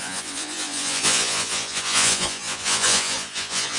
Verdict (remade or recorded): remade